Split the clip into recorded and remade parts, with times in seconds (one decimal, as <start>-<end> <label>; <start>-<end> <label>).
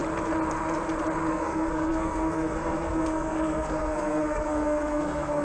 0.0-1.3 recorded; 1.3-5.4 remade